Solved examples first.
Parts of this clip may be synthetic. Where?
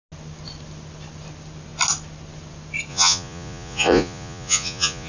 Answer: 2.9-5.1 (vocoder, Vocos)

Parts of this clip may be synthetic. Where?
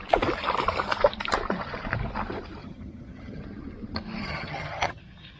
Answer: 2.6-3.4 (vocoder, HiFi-GAN); 4.2-5.0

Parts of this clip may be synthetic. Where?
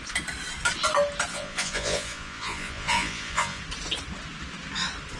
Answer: 1.3-3.6 (vocoder, Vocos)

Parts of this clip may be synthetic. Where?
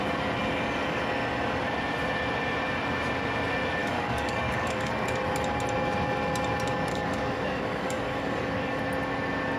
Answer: 0.4-1.0 (codec, DAC); 3.8-4.9; 6.9-8.8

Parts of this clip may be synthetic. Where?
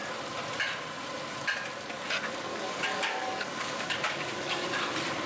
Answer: 2.5-4.7 (codec, DAC)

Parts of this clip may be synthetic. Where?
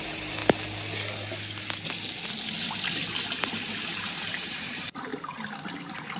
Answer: 0.0-0.4 (vocoder, BigVGAN v2); 4.1-5.1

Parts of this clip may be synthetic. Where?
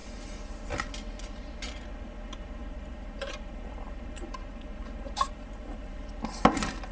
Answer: 2.6-6.0 (vocoder, BigVGAN v2)